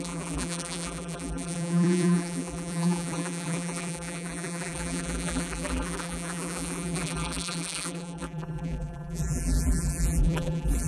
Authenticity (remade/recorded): remade